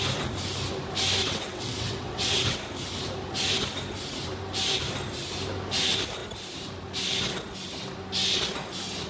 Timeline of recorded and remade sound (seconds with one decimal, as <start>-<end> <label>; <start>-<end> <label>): 0.0-1.2 recorded; 1.2-2.6 remade; 2.6-9.1 recorded